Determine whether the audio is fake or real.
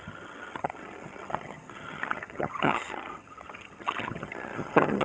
fake